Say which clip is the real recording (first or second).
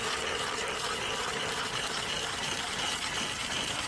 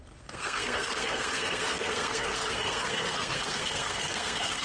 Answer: first